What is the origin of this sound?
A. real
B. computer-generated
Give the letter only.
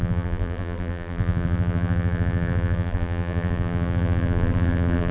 B